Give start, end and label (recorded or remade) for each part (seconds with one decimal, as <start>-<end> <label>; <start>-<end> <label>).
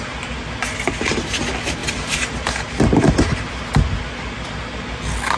0.0-5.4 recorded